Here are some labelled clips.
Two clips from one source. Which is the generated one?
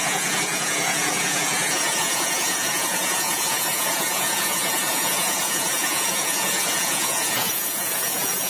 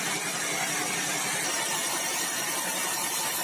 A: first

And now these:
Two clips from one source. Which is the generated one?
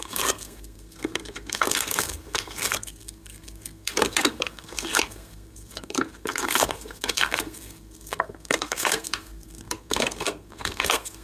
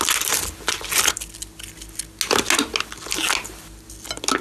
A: first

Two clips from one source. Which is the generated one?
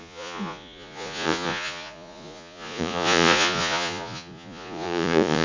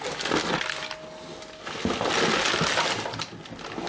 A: first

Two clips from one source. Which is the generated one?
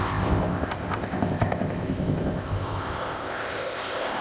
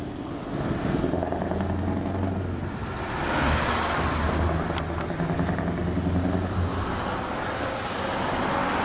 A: first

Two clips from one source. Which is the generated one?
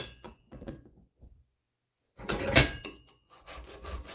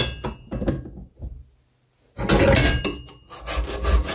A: first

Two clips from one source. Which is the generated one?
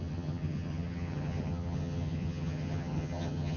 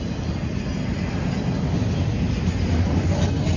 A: first